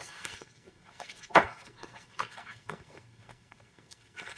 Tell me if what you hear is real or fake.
fake